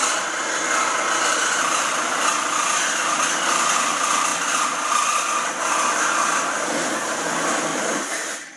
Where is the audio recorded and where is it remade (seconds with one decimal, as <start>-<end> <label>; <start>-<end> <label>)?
0.0-1.3 recorded; 1.3-1.9 remade; 1.9-7.7 recorded; 7.7-8.6 remade